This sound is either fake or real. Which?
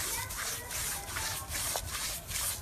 real